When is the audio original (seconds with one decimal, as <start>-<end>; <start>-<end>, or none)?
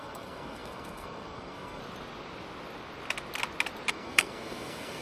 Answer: 1.8-3.9